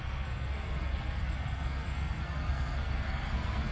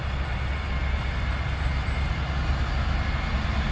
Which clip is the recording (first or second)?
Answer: second